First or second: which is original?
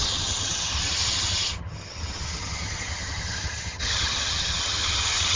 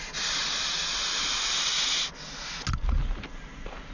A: second